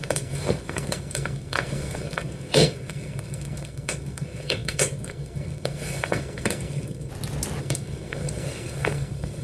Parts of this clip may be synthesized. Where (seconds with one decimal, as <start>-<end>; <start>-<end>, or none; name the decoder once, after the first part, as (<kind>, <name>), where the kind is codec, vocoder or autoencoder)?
0.0-7.1 (codec, SNAC); 7.6-9.4